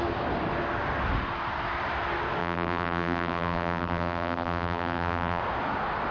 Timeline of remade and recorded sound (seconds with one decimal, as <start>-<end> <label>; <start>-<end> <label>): 0.0-2.4 recorded; 2.4-5.4 remade; 5.4-6.1 recorded